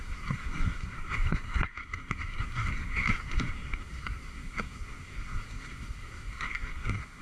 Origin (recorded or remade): remade